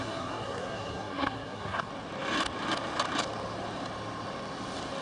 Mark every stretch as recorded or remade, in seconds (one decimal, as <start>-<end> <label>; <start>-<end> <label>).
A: 0.0-1.9 remade; 1.9-5.0 recorded